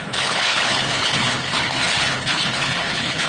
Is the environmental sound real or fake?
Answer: fake